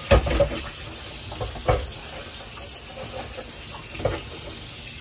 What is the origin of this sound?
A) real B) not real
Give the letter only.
A